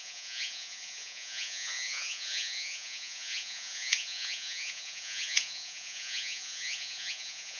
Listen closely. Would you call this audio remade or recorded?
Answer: remade